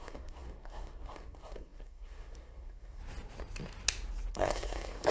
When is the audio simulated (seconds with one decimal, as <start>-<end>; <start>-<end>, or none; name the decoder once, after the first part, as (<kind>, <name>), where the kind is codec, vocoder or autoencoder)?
0.0-3.0 (codec, SNAC); 4.3-5.1